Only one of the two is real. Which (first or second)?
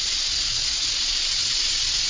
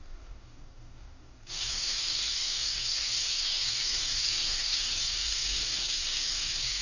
first